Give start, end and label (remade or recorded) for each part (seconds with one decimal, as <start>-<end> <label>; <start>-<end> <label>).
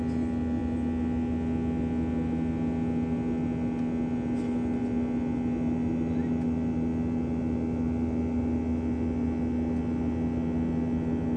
0.0-11.4 recorded